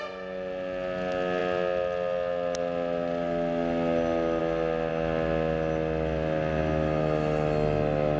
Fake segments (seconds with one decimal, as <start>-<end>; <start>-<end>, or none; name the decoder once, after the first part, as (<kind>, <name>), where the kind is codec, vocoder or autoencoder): none